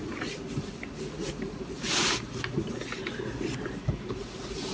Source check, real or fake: real